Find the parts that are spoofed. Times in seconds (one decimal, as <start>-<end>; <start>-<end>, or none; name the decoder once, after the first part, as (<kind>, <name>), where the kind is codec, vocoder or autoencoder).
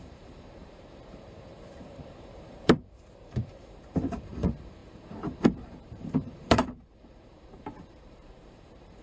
0.0-9.0 (vocoder, BigVGAN v2)